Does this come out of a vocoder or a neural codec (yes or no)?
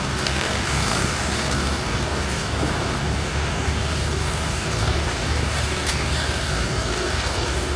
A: yes